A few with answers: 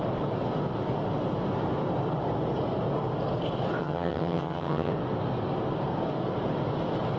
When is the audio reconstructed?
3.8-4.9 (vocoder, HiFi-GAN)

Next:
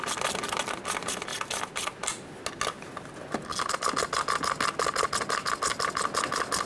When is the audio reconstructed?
none

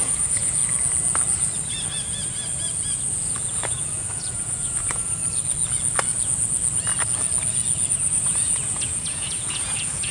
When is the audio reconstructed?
0.0-0.6 (vocoder, Vocos); 3.1-5.2; 7.9-10.1

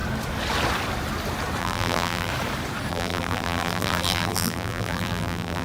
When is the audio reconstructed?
1.6-2.3 (vocoder, BigVGAN v2); 2.9-5.6

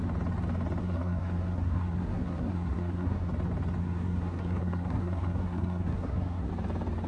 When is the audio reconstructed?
0.8-3.3 (codec, SNAC); 3.8-6.5

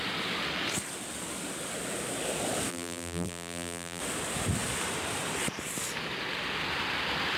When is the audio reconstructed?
2.7-4.0 (vocoder, BigVGAN v2)

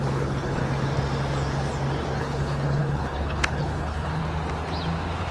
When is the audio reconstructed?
0.0-0.6 (codec, HILCodec); 2.2-4.2

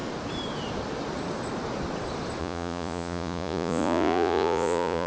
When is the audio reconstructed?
2.4-5.1 (vocoder, Vocos)